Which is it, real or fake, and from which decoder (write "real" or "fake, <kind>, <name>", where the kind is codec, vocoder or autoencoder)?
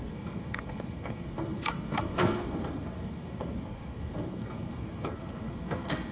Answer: fake, codec, SNAC